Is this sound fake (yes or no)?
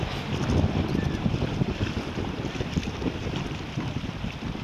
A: yes